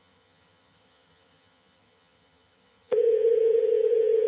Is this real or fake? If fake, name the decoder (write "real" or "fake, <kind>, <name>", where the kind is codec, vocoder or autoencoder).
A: fake, vocoder, HiFi-GAN